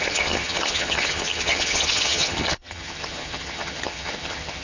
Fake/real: fake